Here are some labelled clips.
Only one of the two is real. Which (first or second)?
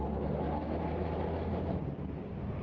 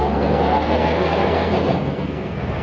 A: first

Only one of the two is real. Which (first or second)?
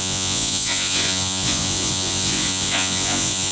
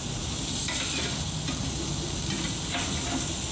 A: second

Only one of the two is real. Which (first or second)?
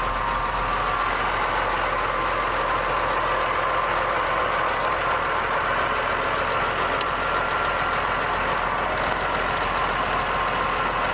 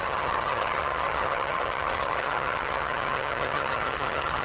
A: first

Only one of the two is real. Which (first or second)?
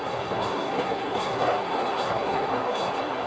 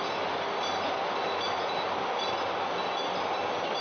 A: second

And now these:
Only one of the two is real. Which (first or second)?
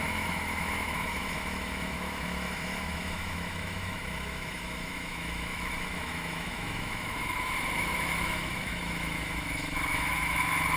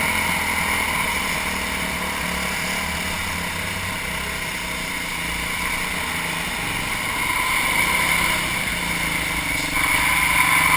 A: second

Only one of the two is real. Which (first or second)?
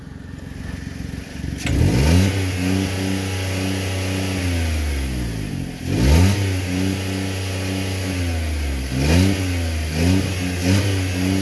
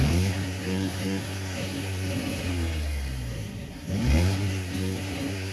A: first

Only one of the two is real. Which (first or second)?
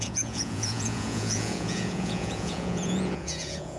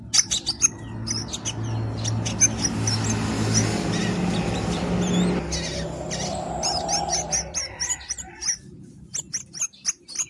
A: second